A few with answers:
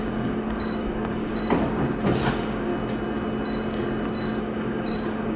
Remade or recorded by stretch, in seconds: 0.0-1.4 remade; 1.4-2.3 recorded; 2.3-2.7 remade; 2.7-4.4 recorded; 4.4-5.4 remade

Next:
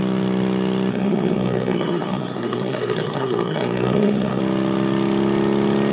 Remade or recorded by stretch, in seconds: 0.0-0.9 recorded; 0.9-4.4 remade; 4.4-5.9 recorded

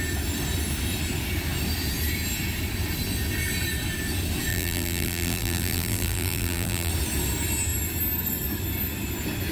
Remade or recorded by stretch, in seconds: 0.0-4.5 recorded; 4.5-6.9 remade; 6.9-9.5 recorded

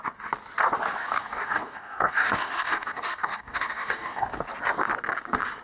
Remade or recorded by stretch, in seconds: 0.0-1.0 recorded; 1.0-4.4 remade; 4.4-5.6 recorded

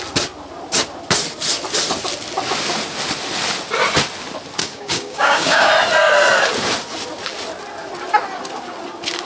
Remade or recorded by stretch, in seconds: 0.0-4.6 recorded; 4.6-5.7 remade; 5.7-9.3 recorded